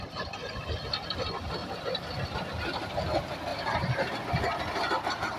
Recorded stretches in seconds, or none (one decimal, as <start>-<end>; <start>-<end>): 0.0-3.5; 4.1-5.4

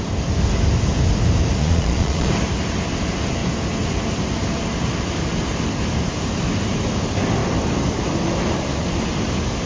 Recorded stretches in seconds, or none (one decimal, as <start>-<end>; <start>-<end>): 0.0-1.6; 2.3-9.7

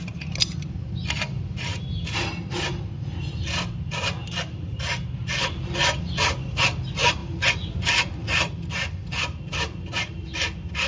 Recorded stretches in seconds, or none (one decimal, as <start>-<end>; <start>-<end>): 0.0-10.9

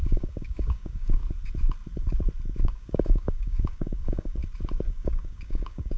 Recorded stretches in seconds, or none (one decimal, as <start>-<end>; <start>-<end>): 1.2-2.6; 4.4-4.9

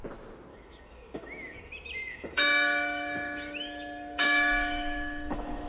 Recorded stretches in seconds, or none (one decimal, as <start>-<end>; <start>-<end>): 0.0-0.5; 1.7-2.1

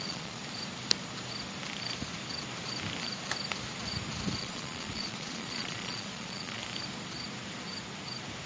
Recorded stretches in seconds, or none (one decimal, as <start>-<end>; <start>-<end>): 0.4-4.4; 6.6-8.5